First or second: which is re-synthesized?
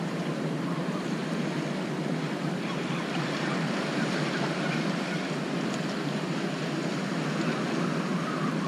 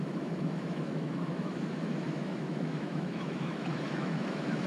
second